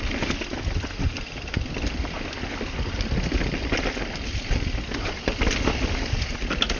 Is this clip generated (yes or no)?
no